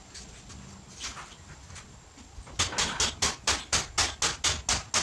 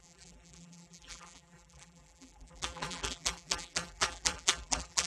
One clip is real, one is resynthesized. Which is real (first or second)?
first